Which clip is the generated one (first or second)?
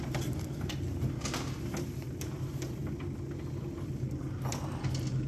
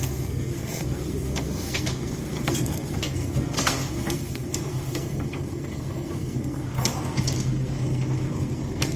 second